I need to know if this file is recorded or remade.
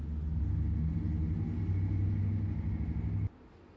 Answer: recorded